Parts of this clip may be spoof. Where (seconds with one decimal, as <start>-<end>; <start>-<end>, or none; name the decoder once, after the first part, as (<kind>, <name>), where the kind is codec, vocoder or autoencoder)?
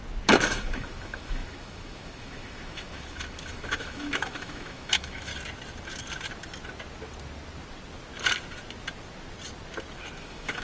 0.6-5.3 (autoencoder, DAC-VAE); 10.2-10.6